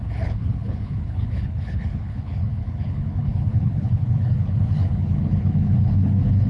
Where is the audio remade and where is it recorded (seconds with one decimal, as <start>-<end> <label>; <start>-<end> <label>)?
0.0-6.5 remade